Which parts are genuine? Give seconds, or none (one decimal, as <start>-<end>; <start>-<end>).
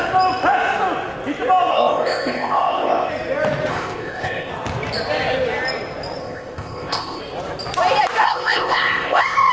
0.0-1.7; 3.1-3.7; 4.5-6.2; 7.2-8.2